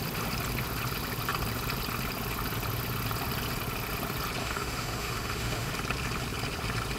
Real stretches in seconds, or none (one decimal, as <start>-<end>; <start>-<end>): 0.0-4.4; 5.7-7.0